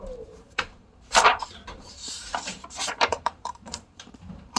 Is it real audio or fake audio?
fake